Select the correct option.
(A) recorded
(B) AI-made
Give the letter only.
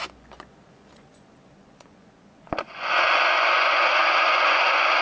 B